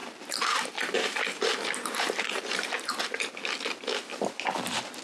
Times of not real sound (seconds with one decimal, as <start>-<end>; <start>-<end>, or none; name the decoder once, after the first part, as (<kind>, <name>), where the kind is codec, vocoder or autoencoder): 0.0-2.9 (vocoder, BigVGAN v2)